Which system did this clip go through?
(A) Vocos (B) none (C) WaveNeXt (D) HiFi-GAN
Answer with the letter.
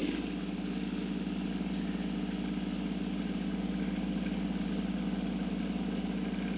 B